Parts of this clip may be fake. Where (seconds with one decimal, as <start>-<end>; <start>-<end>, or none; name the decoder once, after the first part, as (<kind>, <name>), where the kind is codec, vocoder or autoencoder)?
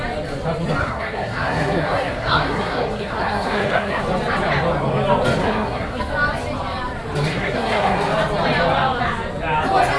0.8-4.0 (codec, SNAC); 5.4-6.0; 7.3-8.0